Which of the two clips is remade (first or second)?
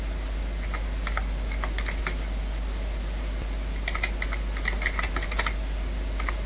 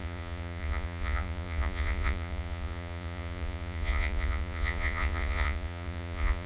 second